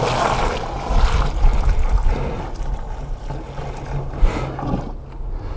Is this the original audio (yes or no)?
yes